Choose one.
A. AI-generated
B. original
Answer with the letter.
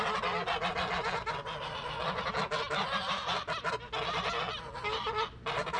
B